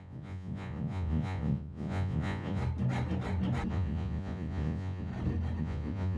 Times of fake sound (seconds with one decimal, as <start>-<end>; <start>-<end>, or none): 0.0-2.6; 3.7-5.1; 5.6-6.2